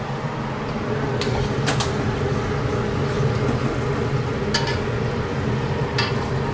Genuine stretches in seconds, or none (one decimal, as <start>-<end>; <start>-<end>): 0.0-6.5